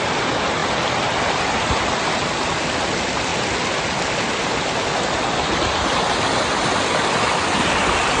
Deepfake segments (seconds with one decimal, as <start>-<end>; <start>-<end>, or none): none